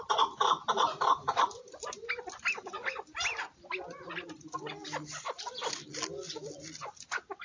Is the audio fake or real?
real